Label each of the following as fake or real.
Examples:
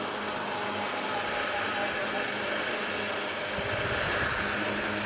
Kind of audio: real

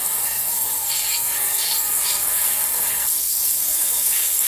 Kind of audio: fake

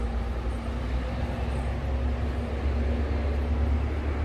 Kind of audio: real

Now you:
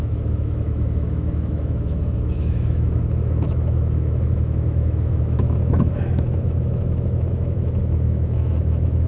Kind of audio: fake